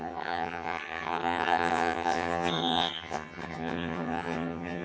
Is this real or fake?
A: fake